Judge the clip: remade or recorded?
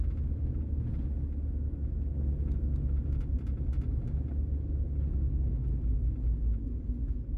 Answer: recorded